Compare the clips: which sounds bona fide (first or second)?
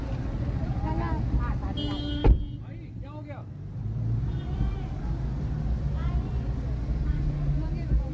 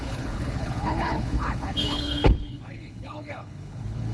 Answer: first